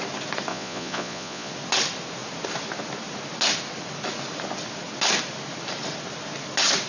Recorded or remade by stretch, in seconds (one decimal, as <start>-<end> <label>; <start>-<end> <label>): 0.0-0.5 recorded; 0.5-1.5 remade; 1.5-6.9 recorded